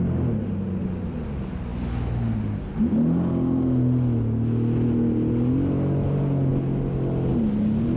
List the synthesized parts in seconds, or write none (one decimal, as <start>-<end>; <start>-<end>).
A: none